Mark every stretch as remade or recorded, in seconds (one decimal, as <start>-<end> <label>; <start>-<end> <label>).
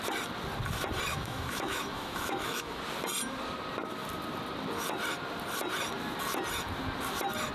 0.0-1.1 recorded; 1.1-2.8 remade; 2.8-7.5 recorded